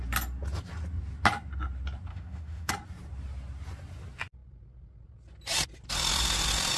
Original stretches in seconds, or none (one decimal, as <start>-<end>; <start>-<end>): 0.0-2.1; 2.7-6.8